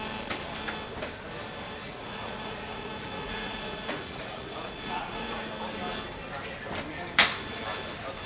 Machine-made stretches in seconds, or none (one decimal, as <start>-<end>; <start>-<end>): 1.8-5.4